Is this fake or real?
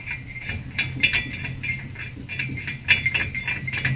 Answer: real